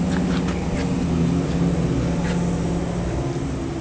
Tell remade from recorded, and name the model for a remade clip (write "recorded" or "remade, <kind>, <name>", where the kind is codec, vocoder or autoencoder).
recorded